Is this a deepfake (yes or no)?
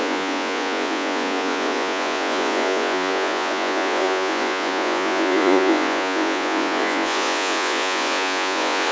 yes